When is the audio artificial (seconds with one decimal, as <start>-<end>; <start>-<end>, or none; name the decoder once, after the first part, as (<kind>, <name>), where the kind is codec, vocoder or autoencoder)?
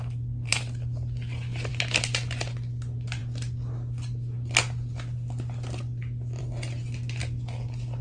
none